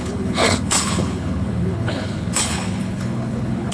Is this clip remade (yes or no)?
yes